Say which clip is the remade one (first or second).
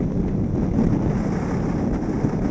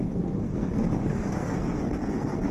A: second